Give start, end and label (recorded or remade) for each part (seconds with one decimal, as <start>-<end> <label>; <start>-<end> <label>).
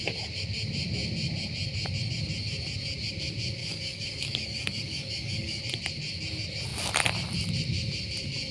0.0-3.6 recorded; 3.6-5.6 remade; 5.6-8.5 recorded